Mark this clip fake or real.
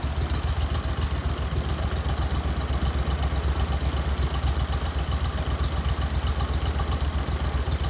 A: real